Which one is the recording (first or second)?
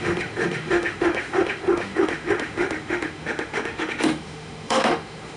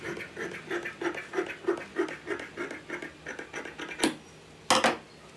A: second